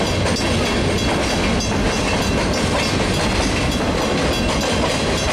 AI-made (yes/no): no